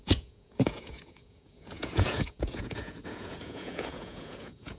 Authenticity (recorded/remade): remade